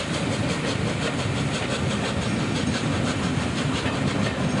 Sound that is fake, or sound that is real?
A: real